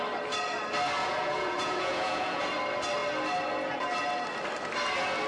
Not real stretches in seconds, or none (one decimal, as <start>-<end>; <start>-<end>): 1.0-2.4